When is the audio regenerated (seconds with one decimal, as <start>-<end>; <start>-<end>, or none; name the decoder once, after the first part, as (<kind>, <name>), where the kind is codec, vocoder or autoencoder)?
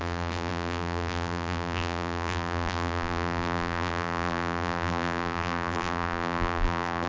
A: 0.0-7.1 (vocoder, BigVGAN v2)